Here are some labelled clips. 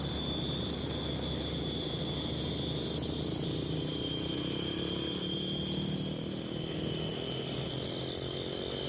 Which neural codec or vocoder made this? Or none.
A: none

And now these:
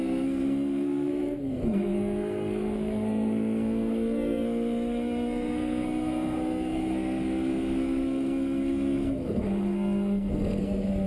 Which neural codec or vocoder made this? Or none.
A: codec, SNAC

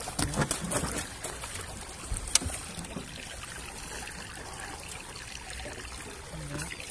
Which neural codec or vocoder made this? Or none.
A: none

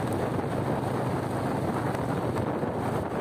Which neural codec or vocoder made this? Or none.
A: none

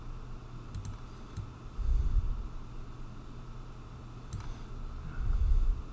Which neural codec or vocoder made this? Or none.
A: none